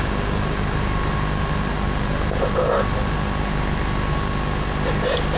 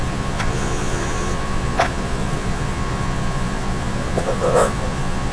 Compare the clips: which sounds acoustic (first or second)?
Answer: first